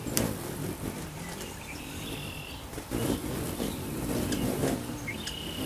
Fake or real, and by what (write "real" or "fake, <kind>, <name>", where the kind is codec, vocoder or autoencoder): fake, vocoder, BigVGAN v2